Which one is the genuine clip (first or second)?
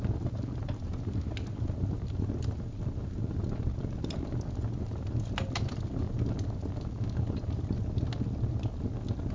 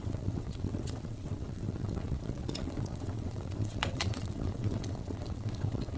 first